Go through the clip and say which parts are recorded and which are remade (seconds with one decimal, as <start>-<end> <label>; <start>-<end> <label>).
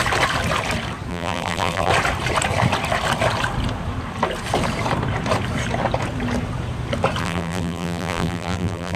0.0-1.1 recorded; 1.1-1.9 remade; 1.9-7.2 recorded; 7.2-9.0 remade